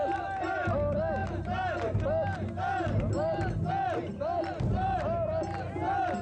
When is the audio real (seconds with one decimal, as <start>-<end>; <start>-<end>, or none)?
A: 0.0-6.2